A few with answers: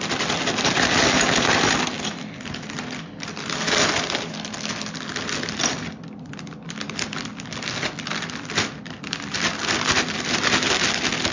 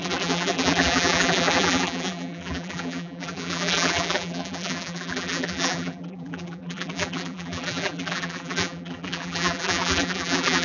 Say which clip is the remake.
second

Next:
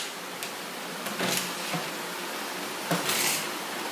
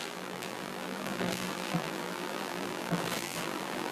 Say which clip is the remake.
second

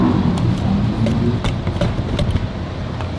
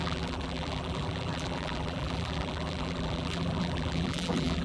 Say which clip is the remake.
second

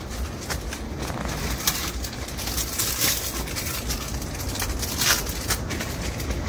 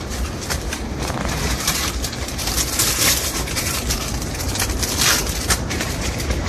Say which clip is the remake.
second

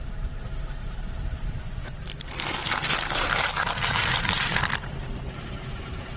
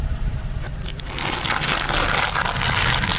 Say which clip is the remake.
first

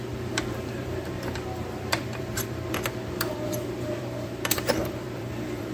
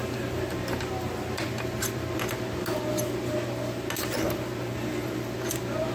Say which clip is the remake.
first